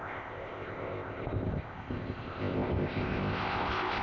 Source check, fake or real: fake